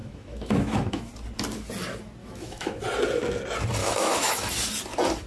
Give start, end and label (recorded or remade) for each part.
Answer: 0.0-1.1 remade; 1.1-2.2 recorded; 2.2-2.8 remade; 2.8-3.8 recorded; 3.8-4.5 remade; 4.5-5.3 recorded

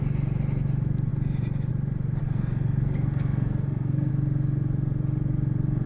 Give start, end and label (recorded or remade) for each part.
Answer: 0.0-2.2 recorded; 2.2-4.1 remade; 4.1-5.9 recorded

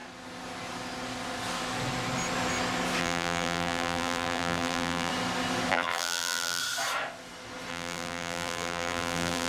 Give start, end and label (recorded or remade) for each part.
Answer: 0.0-3.0 recorded; 3.0-5.1 remade; 5.1-5.7 recorded; 5.7-6.6 remade; 6.6-7.7 recorded; 7.7-9.5 remade

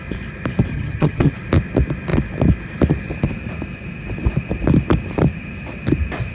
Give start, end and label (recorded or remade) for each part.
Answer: 0.0-0.7 recorded; 0.7-1.3 remade; 1.3-6.3 recorded